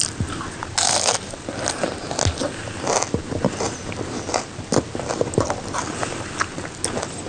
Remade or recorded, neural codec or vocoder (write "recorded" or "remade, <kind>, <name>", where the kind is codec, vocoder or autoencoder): recorded